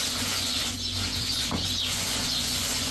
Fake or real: fake